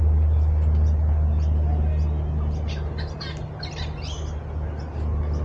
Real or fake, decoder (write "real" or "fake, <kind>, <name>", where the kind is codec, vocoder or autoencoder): real